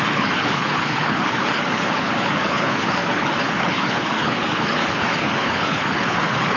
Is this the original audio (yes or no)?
no